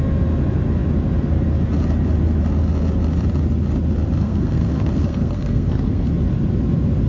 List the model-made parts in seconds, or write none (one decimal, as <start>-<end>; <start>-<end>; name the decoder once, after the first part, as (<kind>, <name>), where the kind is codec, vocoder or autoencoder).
4.2-6.1 (codec, SNAC)